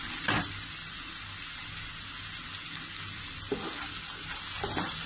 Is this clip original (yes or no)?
yes